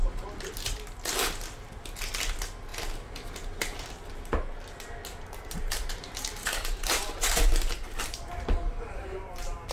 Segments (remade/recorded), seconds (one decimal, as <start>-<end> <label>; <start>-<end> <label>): 0.0-5.1 recorded; 5.1-9.7 remade